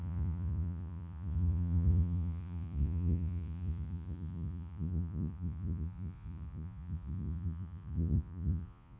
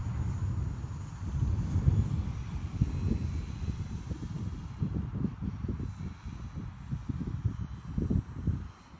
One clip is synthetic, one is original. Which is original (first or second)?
second